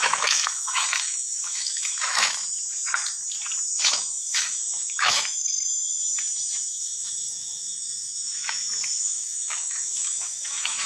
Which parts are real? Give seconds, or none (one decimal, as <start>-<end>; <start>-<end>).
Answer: 2.4-3.7; 6.0-6.8